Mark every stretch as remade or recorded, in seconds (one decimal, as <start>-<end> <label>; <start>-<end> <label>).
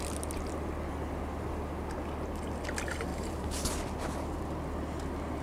0.0-3.1 recorded; 3.1-3.7 remade; 3.7-5.4 recorded